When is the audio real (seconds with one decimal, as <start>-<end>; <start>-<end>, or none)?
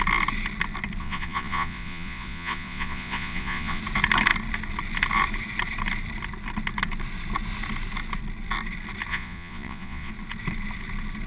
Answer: 0.0-1.0; 3.8-9.1; 10.1-11.3